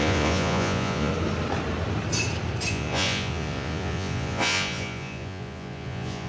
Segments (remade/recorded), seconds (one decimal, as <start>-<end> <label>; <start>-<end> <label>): 0.0-1.1 remade; 1.1-2.7 recorded; 2.7-6.3 remade